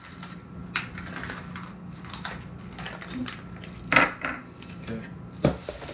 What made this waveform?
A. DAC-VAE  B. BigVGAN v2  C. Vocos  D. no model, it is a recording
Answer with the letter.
D